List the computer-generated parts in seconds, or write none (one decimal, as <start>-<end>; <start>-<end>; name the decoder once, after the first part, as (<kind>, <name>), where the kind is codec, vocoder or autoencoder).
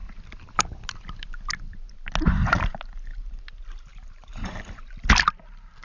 2.4-3.1 (vocoder, BigVGAN v2); 3.9-4.8